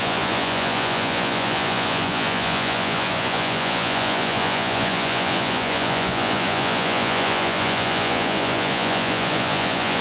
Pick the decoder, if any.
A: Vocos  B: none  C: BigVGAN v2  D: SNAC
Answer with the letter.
A